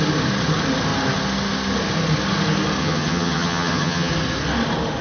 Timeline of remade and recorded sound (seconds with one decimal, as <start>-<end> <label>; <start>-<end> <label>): 0.0-2.8 recorded; 2.8-4.1 remade; 4.1-5.0 recorded